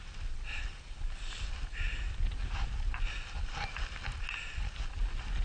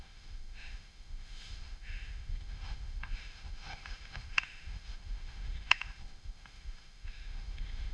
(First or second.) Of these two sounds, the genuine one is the first